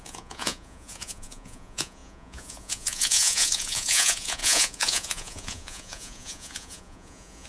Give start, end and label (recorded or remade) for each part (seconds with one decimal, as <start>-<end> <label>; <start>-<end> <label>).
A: 0.0-7.5 remade